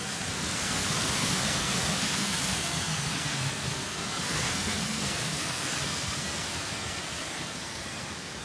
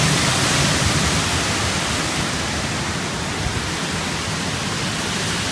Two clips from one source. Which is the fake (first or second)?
first